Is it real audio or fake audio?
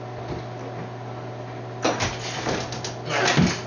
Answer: real